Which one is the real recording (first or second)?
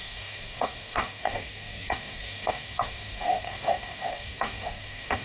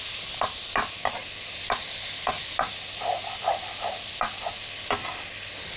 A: second